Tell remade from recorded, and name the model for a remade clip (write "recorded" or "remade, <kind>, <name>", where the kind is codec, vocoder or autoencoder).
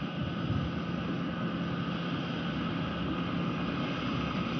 recorded